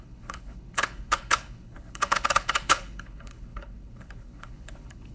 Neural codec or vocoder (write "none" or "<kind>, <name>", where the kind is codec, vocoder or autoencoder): codec, HILCodec